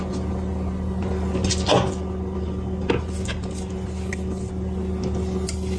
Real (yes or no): yes